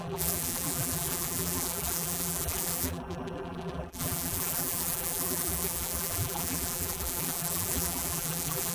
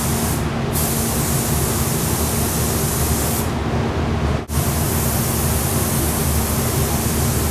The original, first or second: second